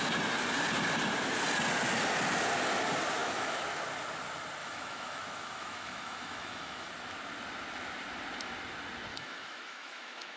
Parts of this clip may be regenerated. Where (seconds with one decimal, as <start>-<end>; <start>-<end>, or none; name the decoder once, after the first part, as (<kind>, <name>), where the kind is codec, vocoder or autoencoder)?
3.2-3.8 (autoencoder, DAC-VAE); 4.6-6.9; 9.1-10.4